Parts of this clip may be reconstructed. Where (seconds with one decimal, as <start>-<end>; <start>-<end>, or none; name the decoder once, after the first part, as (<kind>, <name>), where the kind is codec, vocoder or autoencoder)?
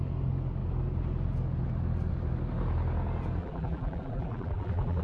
3.4-5.0 (vocoder, BigVGAN v2)